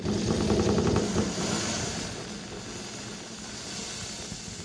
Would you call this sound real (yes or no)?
yes